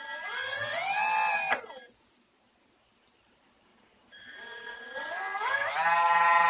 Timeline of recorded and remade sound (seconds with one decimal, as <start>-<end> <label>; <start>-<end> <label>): 0.0-3.7 recorded; 3.7-5.2 remade; 5.2-6.5 recorded